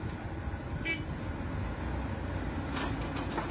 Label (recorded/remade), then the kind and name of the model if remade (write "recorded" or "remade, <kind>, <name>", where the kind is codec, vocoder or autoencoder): recorded